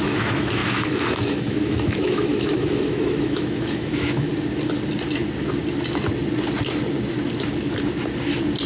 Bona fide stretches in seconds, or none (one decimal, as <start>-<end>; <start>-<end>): 4.3-8.7